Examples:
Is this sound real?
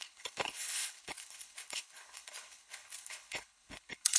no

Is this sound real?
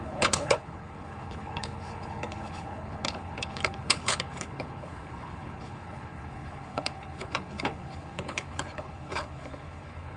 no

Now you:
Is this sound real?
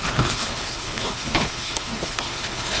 no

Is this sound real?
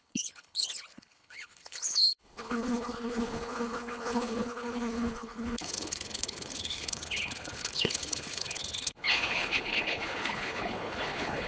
no